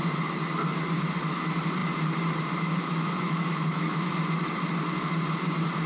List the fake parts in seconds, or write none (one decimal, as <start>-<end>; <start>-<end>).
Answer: 2.8-4.1